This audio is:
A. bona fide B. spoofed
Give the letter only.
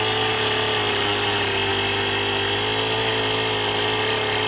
A